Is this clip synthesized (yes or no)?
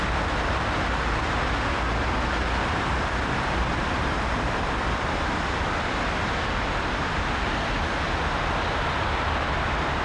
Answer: no